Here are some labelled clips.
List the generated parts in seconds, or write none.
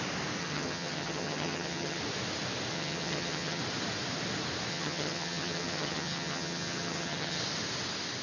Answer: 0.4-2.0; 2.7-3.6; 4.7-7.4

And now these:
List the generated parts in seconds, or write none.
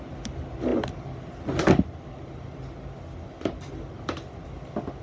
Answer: none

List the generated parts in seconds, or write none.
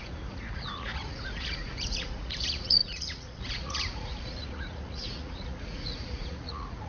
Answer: 0.0-6.9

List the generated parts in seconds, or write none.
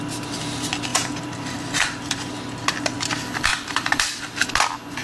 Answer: 0.9-2.3; 3.5-4.3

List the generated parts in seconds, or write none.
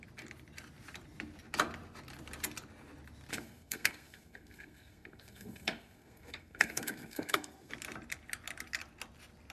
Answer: 3.3-7.7